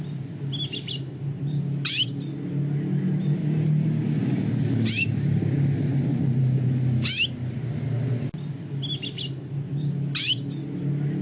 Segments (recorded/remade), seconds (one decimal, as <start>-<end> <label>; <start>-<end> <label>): 0.0-11.2 recorded